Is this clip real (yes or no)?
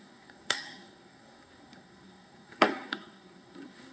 no